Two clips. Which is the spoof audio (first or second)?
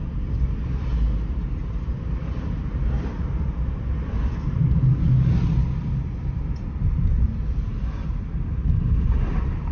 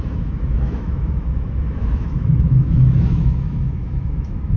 second